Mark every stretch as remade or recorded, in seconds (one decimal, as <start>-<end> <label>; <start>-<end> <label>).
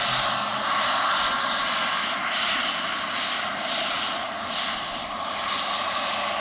0.0-0.5 recorded; 0.5-4.3 remade; 4.3-6.4 recorded